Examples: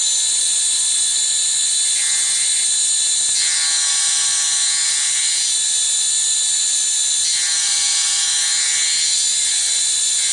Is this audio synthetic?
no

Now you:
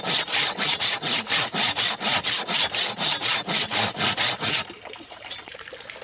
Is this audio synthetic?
no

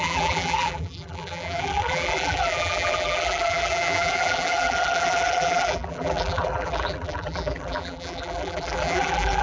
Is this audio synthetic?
yes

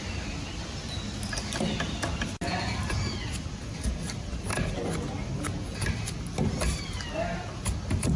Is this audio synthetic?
no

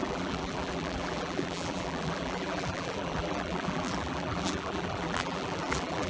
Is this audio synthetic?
yes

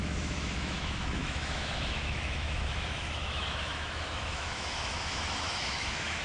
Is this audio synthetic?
yes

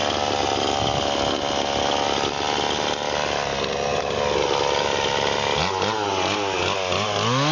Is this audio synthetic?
no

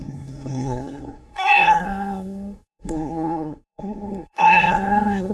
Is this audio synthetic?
yes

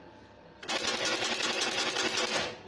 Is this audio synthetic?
no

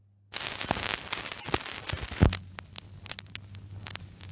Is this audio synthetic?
no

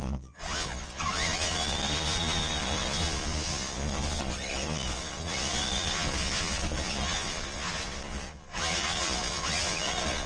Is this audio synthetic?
yes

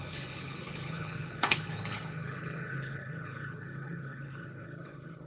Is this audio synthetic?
yes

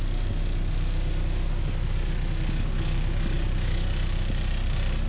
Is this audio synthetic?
no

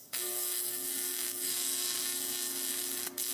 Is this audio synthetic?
yes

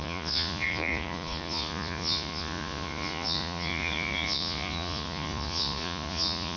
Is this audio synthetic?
yes